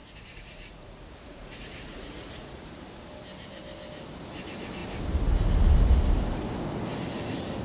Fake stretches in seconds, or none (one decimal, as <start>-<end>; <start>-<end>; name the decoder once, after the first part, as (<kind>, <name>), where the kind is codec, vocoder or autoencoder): 0.0-2.7 (vocoder, Vocos)

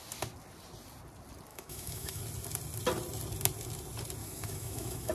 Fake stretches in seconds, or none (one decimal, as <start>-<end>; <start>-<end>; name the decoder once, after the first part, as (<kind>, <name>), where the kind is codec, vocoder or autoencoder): 1.5-2.2 (autoencoder, DAC-VAE); 4.2-5.1

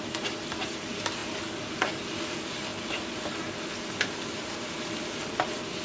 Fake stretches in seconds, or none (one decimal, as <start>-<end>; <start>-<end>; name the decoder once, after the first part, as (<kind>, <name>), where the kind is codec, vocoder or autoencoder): none

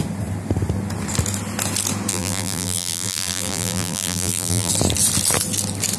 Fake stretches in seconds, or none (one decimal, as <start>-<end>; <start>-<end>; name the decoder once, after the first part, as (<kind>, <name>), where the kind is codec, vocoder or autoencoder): 2.1-4.7 (vocoder, BigVGAN v2)